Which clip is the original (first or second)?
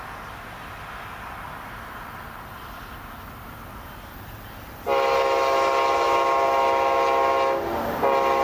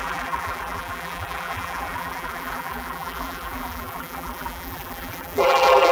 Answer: first